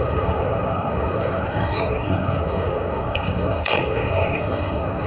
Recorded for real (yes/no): no